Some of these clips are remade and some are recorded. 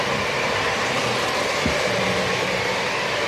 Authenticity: recorded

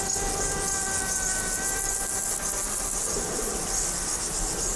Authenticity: recorded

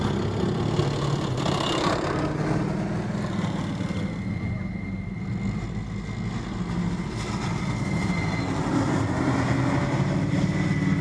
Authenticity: recorded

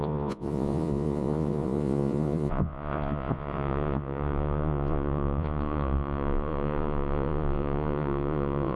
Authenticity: remade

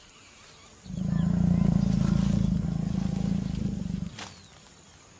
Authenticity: recorded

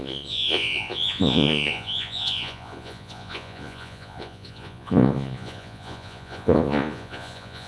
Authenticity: remade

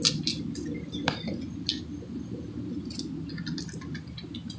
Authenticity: recorded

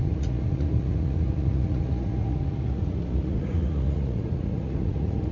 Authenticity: remade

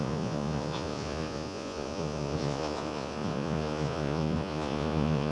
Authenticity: remade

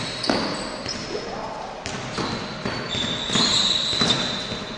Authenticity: recorded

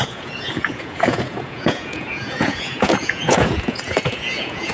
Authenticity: remade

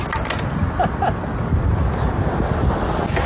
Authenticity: recorded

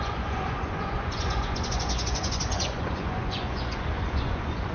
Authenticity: remade